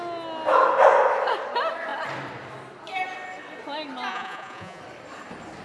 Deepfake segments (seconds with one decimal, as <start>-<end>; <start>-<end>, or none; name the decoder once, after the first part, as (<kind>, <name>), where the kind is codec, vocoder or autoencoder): 4.1-4.8 (vocoder, Vocos)